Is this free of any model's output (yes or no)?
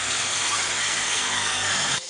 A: no